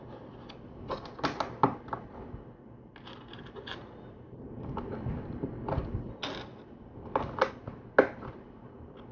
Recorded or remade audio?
recorded